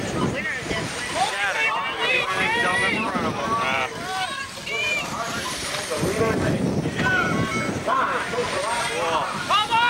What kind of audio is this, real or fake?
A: fake